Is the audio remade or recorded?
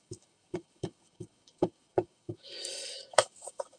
remade